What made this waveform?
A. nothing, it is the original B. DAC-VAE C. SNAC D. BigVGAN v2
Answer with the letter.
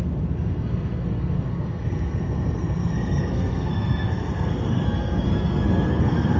C